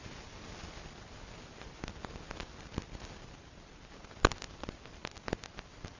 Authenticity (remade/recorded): recorded